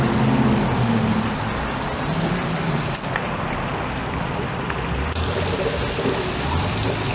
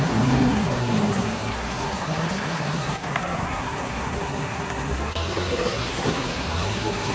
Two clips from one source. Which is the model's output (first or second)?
second